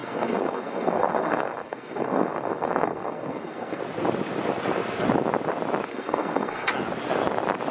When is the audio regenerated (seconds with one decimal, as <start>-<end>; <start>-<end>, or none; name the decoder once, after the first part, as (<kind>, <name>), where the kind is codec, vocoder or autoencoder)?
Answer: 0.0-3.8 (codec, SNAC); 5.9-6.7